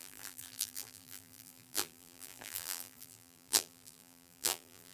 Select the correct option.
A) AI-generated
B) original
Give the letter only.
A